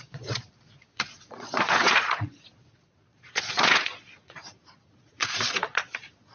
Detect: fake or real fake